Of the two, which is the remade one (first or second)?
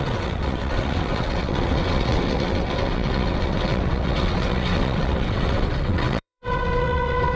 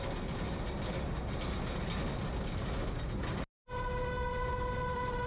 first